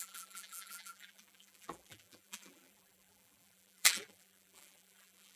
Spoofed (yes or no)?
yes